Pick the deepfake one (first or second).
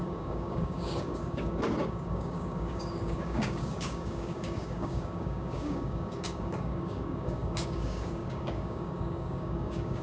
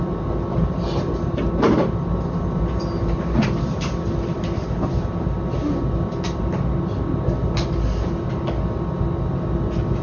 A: first